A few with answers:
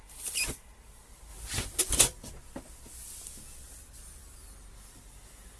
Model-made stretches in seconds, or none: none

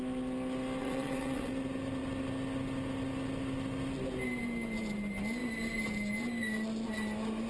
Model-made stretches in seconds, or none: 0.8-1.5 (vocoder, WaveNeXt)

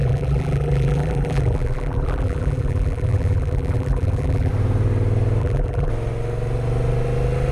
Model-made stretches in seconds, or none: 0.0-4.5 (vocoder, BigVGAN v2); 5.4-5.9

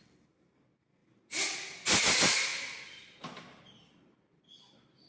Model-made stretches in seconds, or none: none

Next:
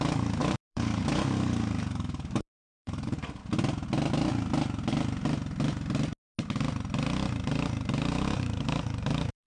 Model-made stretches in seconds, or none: 0.0-3.4 (codec, DAC); 8.1-9.5

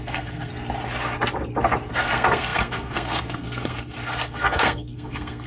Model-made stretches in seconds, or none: 0.0-0.5 (codec, SNAC); 1.9-5.5

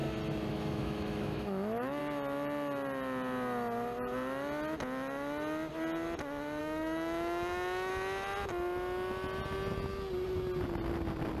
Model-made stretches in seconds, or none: 0.5-2.0 (autoencoder, DAC-VAE); 6.6-7.9

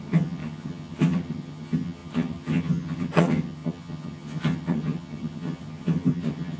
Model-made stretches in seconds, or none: 0.0-6.6 (vocoder, HiFi-GAN)